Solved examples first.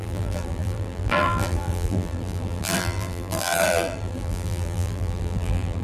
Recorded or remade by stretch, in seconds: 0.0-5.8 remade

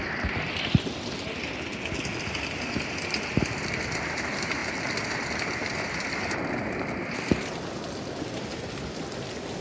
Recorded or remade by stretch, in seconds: 0.0-4.6 recorded; 4.6-6.9 remade; 6.9-9.6 recorded

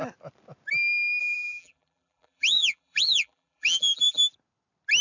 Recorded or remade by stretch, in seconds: 0.0-1.2 recorded; 1.2-4.2 remade; 4.2-5.0 recorded